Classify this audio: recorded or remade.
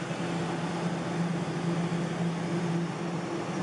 recorded